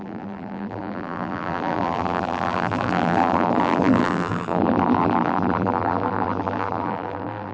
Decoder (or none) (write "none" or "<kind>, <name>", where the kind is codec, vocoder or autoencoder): vocoder, BigVGAN v2